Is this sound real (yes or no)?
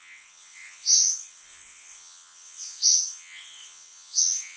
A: no